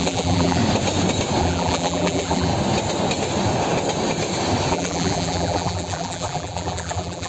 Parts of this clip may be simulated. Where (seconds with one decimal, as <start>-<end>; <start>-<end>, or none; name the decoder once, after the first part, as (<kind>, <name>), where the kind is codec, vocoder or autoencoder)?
0.0-0.6 (vocoder, BigVGAN v2); 1.4-2.5; 4.7-7.3